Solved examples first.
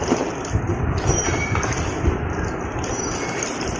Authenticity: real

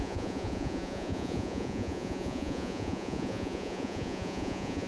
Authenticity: fake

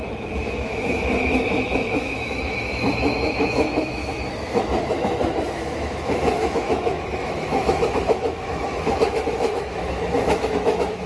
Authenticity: fake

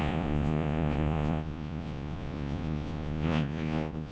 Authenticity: fake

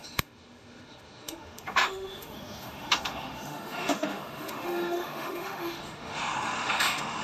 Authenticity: fake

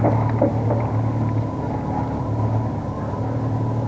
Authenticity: real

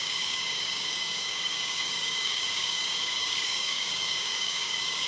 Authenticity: fake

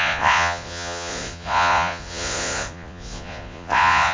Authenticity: fake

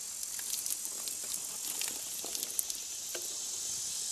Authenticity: real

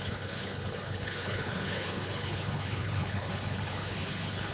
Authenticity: fake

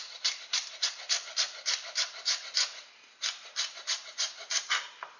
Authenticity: fake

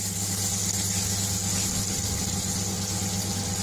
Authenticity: real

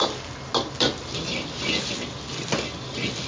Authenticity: real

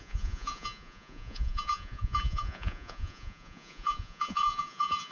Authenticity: fake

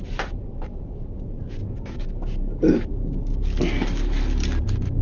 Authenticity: real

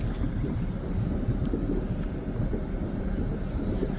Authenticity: real